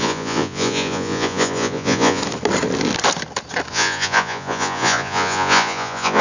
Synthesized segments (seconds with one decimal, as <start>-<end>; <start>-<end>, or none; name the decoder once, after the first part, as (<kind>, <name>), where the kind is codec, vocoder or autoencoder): 0.0-2.2 (vocoder, Vocos); 3.7-6.2

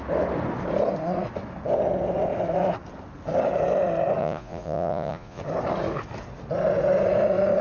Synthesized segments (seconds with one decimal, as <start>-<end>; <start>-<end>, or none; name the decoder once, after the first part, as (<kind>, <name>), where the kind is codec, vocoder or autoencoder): 4.2-5.4 (vocoder, Vocos)

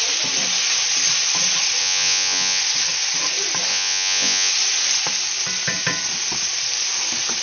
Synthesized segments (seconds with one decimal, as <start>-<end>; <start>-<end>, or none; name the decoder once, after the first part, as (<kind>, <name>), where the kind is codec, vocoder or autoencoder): 1.8-2.6 (vocoder, Vocos); 3.7-4.5

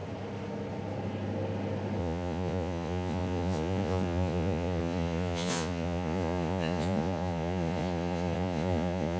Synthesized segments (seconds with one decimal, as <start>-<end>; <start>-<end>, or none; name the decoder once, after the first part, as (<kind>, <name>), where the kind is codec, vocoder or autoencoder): 2.0-9.2 (vocoder, Vocos)

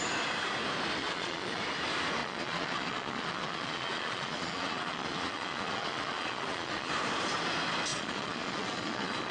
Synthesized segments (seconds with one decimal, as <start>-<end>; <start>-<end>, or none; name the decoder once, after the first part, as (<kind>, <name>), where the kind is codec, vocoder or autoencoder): 1.0-1.6 (vocoder, Vocos); 2.2-6.9; 7.9-9.3